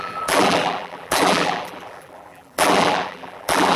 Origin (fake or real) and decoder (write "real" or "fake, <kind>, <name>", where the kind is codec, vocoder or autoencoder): fake, vocoder, BigVGAN v2